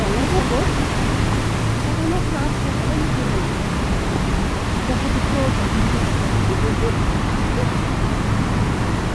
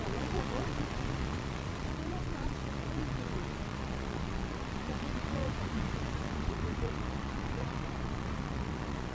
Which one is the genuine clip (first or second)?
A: first